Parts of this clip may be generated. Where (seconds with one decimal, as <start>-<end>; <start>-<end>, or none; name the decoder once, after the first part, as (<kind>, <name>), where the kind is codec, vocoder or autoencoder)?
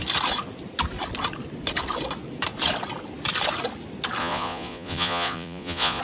4.2-6.0 (vocoder, Vocos)